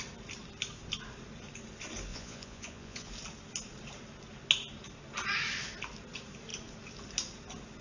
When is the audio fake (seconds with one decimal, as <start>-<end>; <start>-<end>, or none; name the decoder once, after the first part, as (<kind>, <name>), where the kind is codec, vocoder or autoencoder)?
2.1-3.1 (vocoder, Vocos)